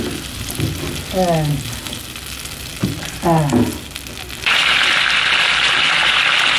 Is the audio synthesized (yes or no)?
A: no